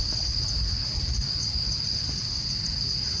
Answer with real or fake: real